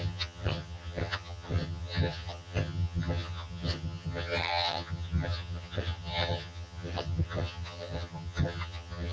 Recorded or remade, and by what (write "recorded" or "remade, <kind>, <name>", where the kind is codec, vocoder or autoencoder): remade, vocoder, HiFi-GAN